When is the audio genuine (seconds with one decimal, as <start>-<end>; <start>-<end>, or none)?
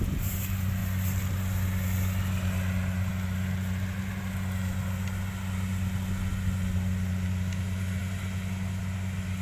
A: 0.0-9.4